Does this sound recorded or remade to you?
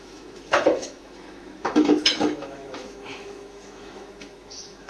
remade